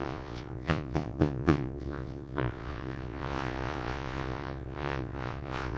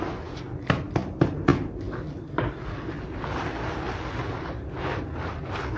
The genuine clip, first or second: second